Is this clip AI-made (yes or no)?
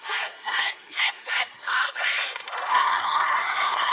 yes